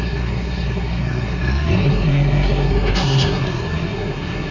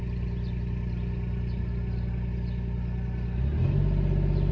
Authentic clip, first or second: second